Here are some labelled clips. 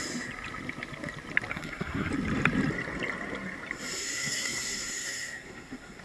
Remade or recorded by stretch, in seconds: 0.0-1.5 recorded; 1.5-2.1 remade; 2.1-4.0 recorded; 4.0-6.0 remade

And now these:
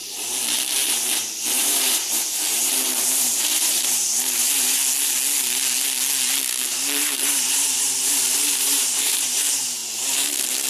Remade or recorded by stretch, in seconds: 0.0-1.5 recorded; 1.5-4.8 remade; 4.8-7.0 recorded; 7.0-9.8 remade; 9.8-10.7 recorded